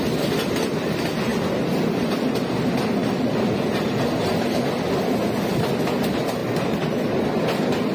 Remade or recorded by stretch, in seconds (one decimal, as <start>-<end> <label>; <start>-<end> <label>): 0.0-3.0 recorded; 3.0-3.6 remade; 3.6-7.9 recorded